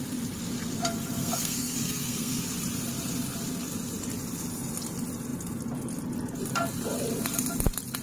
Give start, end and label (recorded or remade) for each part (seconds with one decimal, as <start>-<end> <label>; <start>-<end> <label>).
0.0-1.2 recorded; 1.2-2.4 remade; 2.4-8.0 recorded